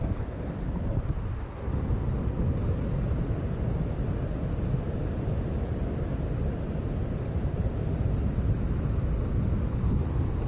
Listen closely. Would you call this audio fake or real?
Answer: real